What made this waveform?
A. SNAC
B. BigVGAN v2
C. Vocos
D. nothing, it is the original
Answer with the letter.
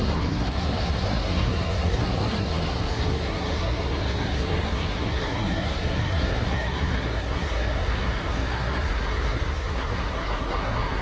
A